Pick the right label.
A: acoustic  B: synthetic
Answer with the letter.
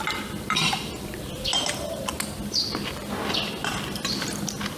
A